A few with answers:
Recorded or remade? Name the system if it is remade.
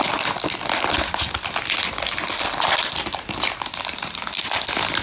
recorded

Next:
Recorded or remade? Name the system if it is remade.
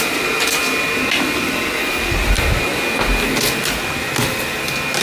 recorded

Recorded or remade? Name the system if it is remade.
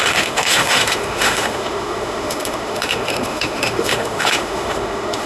remade, autoencoder, DAC-VAE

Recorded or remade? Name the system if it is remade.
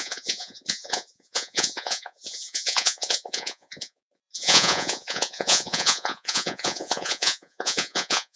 remade, vocoder, Vocos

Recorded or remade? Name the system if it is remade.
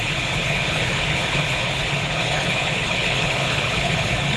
remade, codec, HILCodec